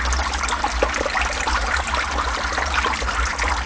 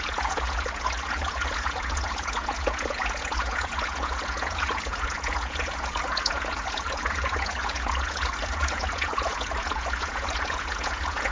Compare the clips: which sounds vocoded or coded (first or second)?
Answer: second